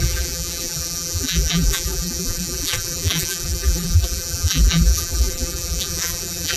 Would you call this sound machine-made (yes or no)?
yes